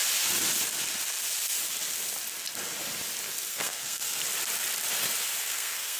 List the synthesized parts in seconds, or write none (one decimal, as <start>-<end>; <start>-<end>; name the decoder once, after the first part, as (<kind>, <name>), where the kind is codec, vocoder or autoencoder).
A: 3.5-4.2 (codec, SNAC); 5.4-6.0